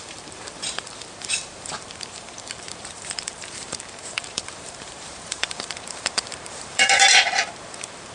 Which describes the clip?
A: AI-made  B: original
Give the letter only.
A